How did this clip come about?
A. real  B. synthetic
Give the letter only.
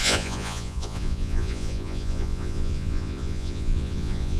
B